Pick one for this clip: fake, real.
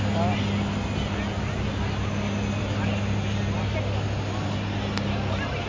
real